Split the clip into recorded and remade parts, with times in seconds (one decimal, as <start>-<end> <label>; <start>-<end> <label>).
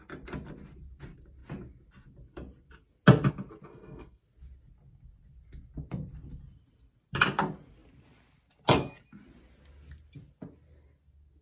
0.0-3.7 recorded; 3.7-4.2 remade; 4.2-11.4 recorded